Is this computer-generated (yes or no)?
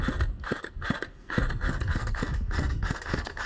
yes